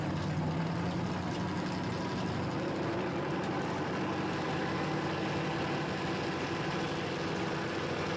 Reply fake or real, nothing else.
real